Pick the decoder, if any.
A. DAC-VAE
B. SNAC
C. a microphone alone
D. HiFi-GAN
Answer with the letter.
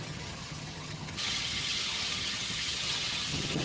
D